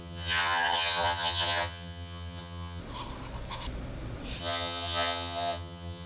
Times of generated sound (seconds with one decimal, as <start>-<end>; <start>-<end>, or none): 0.0-2.8; 4.4-6.1